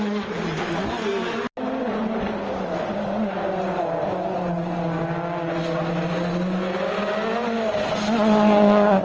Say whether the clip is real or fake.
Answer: real